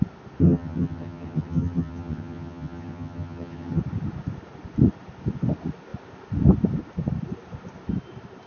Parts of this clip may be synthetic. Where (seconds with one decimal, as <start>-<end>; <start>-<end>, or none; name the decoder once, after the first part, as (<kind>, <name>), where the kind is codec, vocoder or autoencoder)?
0.4-3.8 (vocoder, HiFi-GAN)